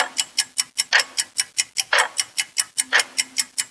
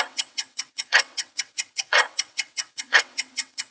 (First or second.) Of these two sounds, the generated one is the second